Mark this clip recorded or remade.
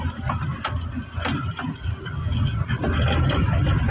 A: recorded